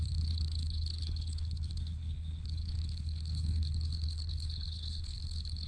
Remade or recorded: remade